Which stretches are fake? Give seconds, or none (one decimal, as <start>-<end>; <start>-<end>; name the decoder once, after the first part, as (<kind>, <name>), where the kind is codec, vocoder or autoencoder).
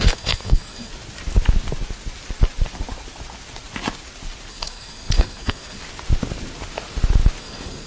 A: 0.0-0.9 (codec, SNAC); 4.5-5.8; 7.4-7.9